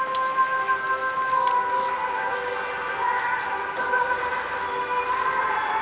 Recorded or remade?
recorded